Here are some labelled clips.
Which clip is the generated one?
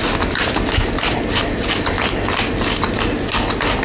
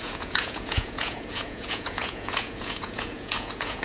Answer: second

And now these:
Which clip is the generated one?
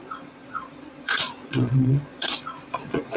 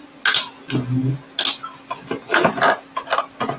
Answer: first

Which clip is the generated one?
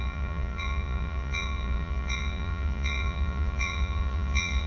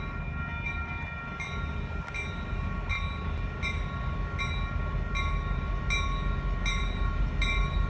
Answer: first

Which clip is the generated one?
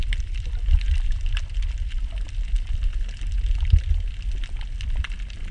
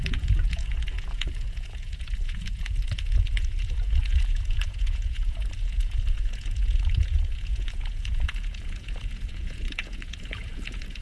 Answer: second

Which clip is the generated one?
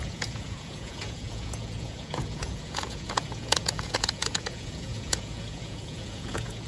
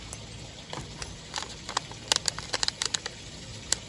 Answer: first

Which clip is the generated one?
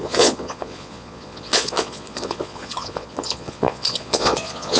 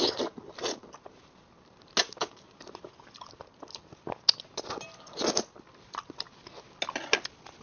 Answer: first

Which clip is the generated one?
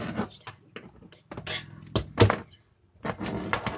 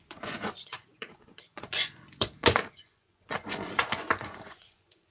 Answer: second